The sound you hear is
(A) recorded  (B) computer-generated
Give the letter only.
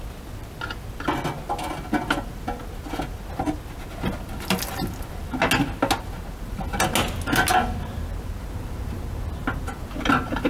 A